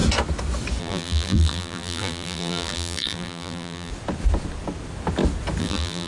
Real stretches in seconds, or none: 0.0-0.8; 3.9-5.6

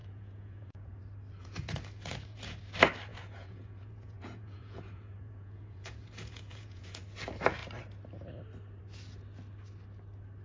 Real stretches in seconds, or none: 1.0-1.4; 2.6-3.1; 7.0-10.4

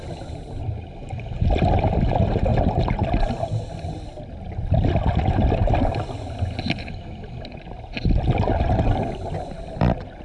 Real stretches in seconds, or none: 0.0-10.2

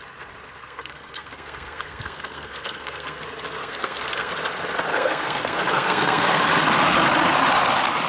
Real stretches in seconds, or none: 0.0-0.6; 3.2-3.6; 4.3-4.9; 6.4-8.1

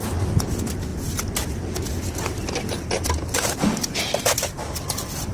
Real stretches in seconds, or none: 0.0-5.3

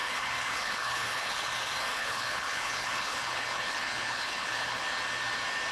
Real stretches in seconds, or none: 1.5-1.9; 4.8-5.7